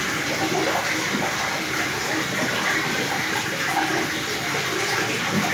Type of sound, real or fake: real